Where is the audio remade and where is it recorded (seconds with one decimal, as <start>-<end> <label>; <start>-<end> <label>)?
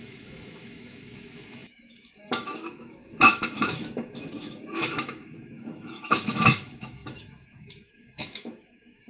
0.0-9.1 remade